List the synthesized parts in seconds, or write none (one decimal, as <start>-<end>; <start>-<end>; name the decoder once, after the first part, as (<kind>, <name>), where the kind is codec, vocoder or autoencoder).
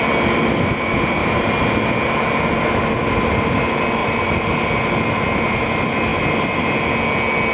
1.2-1.8 (vocoder, BigVGAN v2); 4.0-4.5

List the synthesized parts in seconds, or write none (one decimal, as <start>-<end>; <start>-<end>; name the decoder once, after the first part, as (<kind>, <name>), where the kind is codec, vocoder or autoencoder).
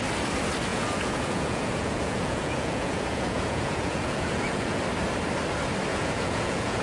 0.7-4.8 (vocoder, Vocos); 5.9-6.8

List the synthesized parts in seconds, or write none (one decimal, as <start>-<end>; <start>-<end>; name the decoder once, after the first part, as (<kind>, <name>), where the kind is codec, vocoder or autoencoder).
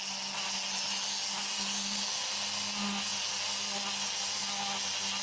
none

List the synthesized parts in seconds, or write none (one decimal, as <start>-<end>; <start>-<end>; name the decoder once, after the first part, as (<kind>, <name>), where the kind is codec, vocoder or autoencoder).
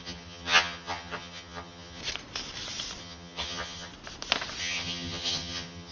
0.0-2.0 (vocoder, HiFi-GAN); 3.0-3.9; 4.6-5.9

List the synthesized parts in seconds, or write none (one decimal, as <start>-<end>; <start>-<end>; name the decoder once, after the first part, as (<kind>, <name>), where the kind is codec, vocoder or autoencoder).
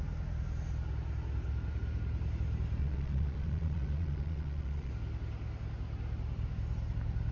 2.8-4.9 (vocoder, Vocos)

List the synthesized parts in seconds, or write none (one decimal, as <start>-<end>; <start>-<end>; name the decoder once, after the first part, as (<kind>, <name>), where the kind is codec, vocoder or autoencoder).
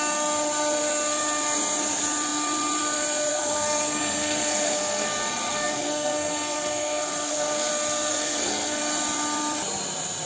3.3-5.1 (codec, SNAC); 5.5-7.7; 8.1-8.8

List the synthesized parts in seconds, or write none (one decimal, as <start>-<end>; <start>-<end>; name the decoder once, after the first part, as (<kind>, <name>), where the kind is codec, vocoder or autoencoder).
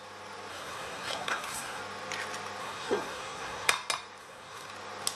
0.5-1.8 (codec, SNAC); 2.6-3.7; 4.2-4.7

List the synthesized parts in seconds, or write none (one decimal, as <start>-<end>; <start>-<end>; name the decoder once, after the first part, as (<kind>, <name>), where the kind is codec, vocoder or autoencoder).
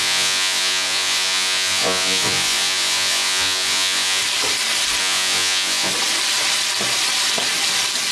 0.0-4.2 (vocoder, Vocos); 5.0-5.9